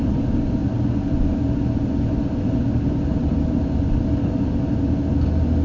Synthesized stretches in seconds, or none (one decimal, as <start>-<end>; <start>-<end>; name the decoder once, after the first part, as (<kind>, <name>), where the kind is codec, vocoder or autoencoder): none